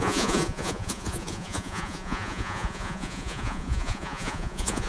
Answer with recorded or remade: remade